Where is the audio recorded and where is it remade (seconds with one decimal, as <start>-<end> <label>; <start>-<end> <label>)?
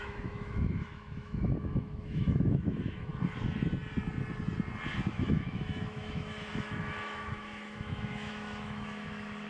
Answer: 0.0-3.1 remade; 3.1-5.1 recorded; 5.1-9.5 remade